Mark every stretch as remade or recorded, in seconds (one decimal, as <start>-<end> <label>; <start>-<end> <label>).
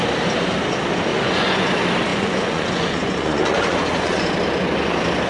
0.0-1.1 recorded; 1.1-1.7 remade; 1.7-2.1 recorded; 2.1-4.3 remade; 4.3-5.3 recorded